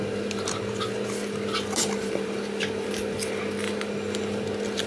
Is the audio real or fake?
real